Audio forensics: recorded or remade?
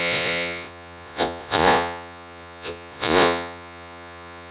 remade